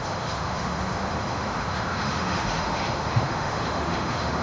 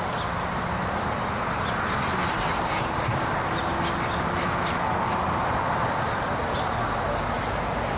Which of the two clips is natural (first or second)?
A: second